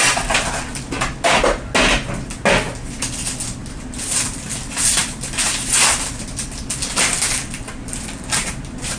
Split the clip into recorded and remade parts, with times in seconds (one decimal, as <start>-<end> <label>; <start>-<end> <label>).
0.0-9.0 recorded